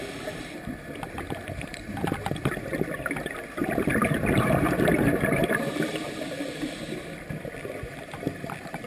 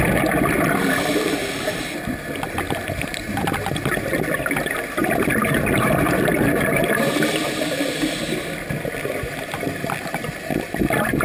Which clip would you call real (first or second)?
second